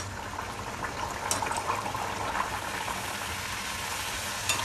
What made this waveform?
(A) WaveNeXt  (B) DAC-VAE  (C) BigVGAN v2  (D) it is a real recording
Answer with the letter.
D